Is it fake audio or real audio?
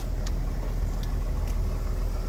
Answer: real